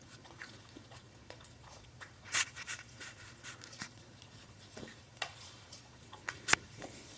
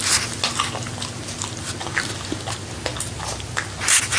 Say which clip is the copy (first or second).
first